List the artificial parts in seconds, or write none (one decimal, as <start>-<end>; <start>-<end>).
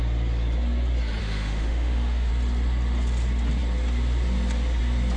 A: 1.2-2.3